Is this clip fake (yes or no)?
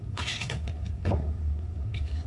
yes